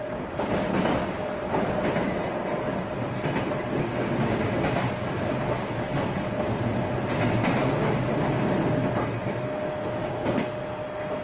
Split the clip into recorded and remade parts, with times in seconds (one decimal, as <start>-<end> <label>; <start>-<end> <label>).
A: 0.0-10.0 recorded; 10.0-10.6 remade; 10.6-11.2 recorded